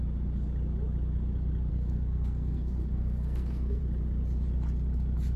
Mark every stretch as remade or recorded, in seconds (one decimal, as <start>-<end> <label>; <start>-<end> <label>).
0.0-1.7 recorded; 1.7-3.8 remade; 3.8-5.4 recorded